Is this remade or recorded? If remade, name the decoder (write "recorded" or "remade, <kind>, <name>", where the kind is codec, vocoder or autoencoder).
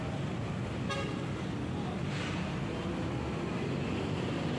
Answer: recorded